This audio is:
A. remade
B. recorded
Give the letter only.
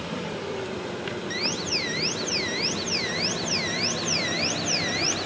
A